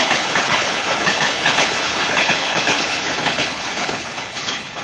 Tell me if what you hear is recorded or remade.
remade